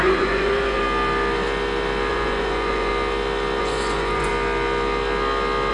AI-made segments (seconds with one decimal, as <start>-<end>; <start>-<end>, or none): 0.0-0.8; 2.1-2.9; 3.6-4.3